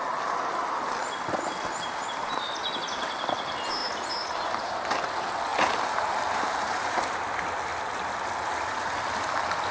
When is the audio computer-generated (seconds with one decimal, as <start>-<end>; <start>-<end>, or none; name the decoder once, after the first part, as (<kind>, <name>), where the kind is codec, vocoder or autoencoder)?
3.8-4.7 (vocoder, BigVGAN v2); 5.5-7.1